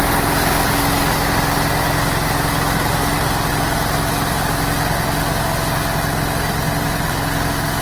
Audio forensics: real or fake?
real